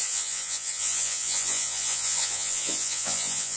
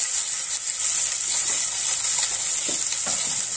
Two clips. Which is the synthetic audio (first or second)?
first